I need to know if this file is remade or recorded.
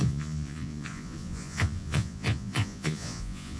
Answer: remade